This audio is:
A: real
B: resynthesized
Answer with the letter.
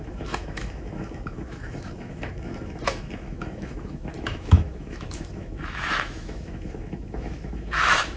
B